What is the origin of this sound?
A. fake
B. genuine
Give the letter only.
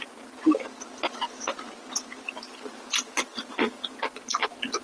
B